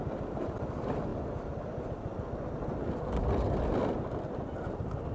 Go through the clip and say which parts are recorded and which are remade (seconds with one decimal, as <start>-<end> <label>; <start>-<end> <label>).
0.0-5.1 recorded